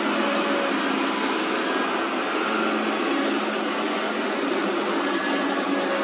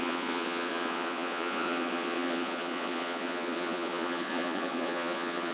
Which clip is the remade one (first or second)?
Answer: second